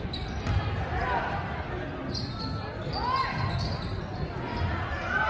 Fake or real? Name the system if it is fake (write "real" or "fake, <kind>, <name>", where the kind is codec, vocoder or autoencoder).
real